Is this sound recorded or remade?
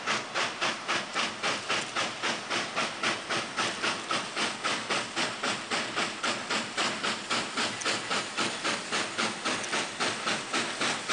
recorded